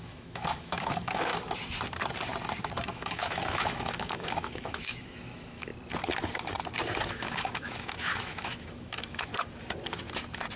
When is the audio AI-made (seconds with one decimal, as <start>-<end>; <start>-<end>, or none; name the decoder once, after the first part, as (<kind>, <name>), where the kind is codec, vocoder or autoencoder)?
0.0-1.3 (autoencoder, DAC-VAE); 2.9-5.7; 7.1-9.3